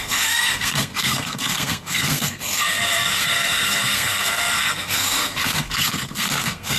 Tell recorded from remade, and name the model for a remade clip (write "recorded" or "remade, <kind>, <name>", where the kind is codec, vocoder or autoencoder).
remade, codec, SNAC